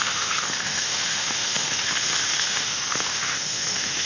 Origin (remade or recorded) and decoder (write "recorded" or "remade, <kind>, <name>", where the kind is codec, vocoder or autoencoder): remade, autoencoder, DAC-VAE